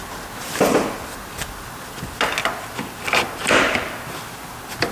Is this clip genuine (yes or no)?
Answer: yes